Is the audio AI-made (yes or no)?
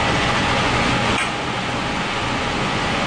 yes